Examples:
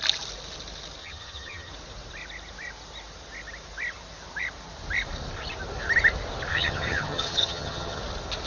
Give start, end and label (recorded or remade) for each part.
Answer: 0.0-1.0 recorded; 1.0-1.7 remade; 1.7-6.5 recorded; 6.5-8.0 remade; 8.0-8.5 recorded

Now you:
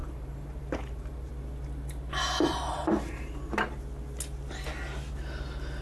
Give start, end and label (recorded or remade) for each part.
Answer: 0.0-1.3 remade; 1.3-2.5 recorded; 2.5-3.5 remade; 3.5-5.8 recorded

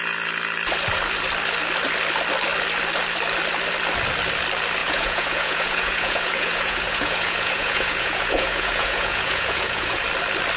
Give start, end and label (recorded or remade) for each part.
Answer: 0.0-4.8 recorded; 4.8-10.0 remade; 10.0-10.6 recorded